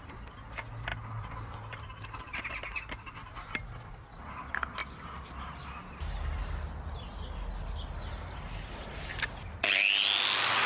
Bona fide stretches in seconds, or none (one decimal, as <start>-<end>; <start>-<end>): 0.0-10.7

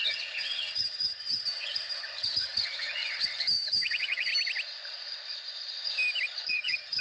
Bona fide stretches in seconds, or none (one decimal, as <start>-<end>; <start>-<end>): 4.3-6.5

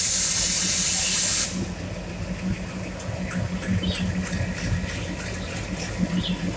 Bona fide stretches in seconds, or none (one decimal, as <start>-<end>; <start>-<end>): 0.0-6.6

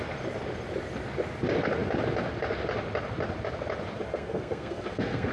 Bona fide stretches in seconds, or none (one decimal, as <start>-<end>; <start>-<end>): 0.0-4.1

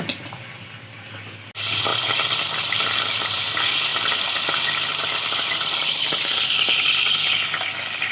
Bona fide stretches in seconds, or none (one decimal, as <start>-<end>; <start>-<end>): 0.0-8.1

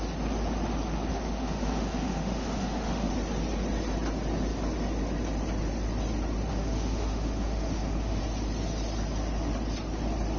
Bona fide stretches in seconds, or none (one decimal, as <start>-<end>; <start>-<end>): 0.0-1.1; 3.1-6.5; 8.2-10.4

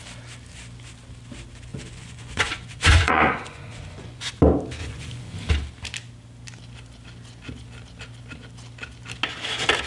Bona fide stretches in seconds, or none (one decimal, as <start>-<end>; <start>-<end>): 0.0-1.7; 4.3-4.8; 5.5-9.9